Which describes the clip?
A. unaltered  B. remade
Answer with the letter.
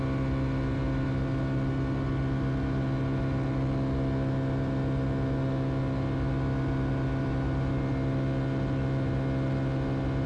A